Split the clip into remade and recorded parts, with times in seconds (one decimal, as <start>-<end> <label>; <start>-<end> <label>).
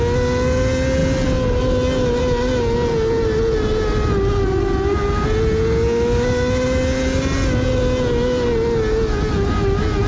0.0-10.1 recorded